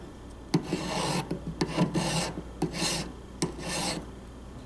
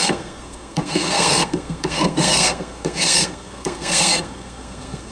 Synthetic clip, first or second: second